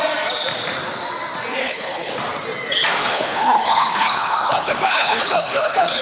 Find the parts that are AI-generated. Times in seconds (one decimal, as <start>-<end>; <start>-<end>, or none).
1.6-2.1; 3.0-6.0